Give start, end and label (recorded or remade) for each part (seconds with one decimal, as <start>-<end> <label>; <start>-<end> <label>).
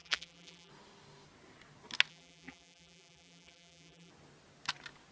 0.0-0.7 remade; 0.7-2.1 recorded; 2.1-4.1 remade; 4.1-5.1 recorded